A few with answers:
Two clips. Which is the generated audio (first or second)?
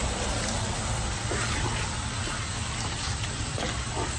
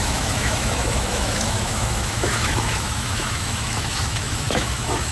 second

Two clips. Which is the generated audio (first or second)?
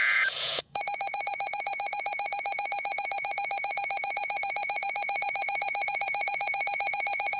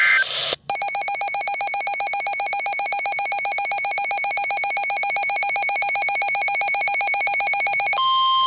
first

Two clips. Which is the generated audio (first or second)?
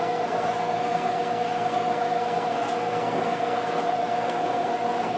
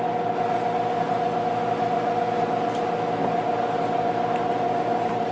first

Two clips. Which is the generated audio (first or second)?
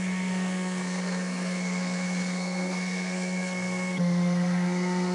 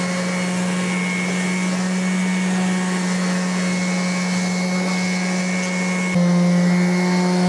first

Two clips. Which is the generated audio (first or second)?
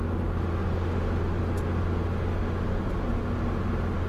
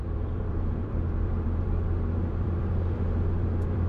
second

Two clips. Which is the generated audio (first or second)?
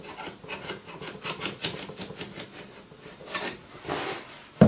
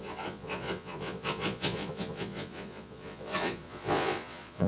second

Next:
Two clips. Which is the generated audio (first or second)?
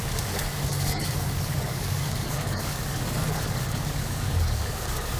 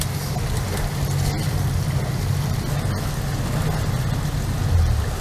first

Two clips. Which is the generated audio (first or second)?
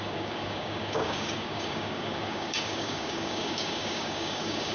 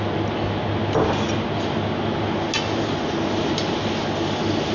first